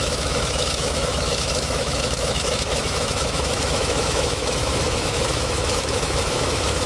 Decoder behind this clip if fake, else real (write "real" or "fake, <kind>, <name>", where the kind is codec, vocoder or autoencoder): fake, autoencoder, DAC-VAE